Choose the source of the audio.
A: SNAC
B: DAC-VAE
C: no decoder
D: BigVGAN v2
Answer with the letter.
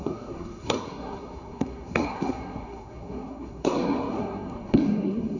A